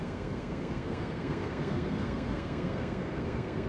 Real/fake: fake